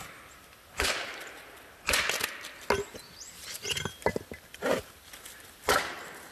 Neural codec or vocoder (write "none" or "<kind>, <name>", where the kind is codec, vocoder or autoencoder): none